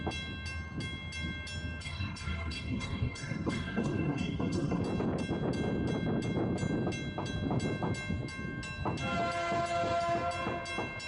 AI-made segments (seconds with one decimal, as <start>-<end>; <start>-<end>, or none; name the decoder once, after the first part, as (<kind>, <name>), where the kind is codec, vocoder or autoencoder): 1.8-4.8 (codec, SNAC)